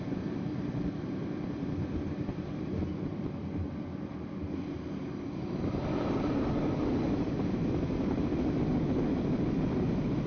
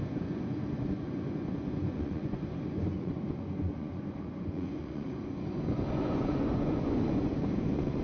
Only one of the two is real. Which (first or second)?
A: first